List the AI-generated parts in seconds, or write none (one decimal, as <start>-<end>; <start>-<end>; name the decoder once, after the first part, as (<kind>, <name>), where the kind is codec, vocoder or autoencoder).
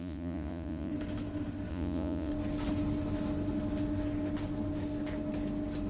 0.0-0.9 (vocoder, Vocos); 1.7-2.3